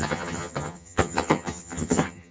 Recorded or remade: remade